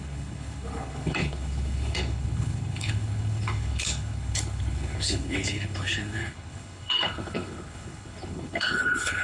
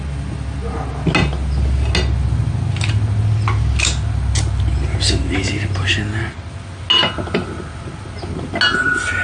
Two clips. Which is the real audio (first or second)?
second